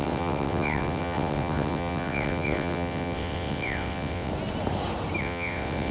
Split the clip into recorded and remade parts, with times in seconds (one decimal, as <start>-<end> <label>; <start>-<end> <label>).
0.0-4.3 remade; 4.3-5.2 recorded; 5.2-5.9 remade